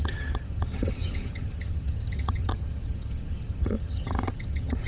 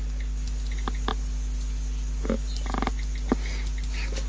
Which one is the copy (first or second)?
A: first